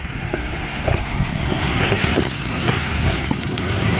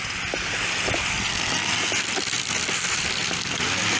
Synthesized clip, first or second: first